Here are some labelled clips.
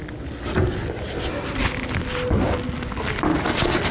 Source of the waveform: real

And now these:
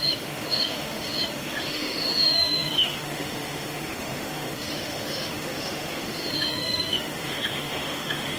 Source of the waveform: fake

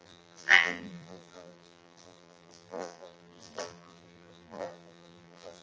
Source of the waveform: fake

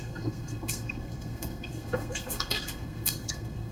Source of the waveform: fake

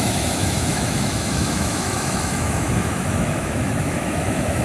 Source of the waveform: fake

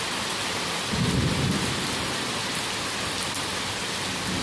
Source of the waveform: real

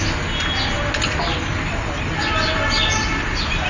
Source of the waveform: real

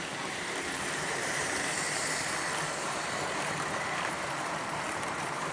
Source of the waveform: fake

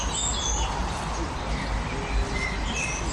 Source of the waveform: real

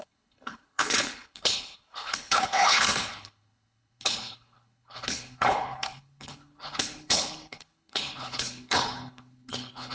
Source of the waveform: fake